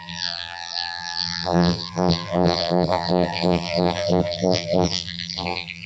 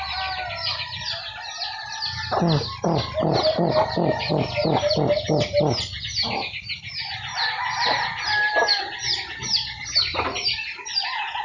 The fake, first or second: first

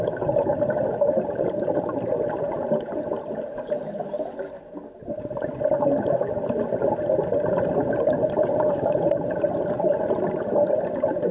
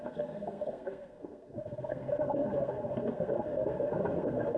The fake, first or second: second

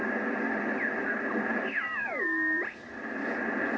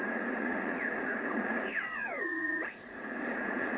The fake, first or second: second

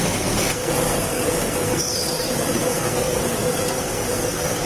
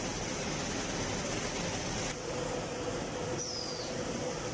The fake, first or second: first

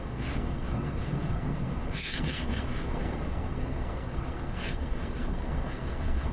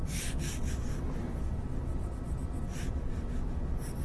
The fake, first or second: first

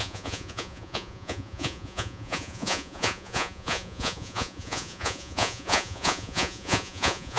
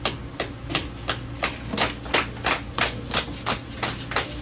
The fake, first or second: first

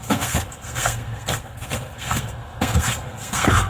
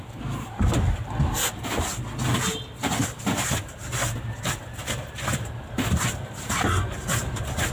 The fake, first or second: first